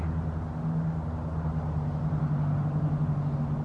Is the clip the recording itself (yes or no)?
yes